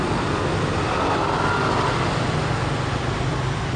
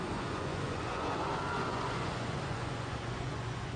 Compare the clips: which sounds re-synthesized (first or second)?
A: second